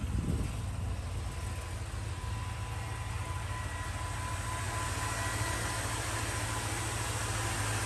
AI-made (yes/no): no